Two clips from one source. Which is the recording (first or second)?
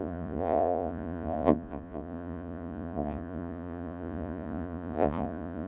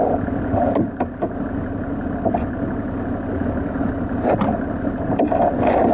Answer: second